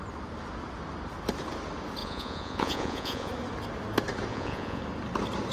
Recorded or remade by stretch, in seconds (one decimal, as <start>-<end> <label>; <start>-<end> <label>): 0.0-2.0 recorded; 2.0-3.3 remade; 3.3-4.3 recorded; 4.3-4.8 remade; 4.8-5.5 recorded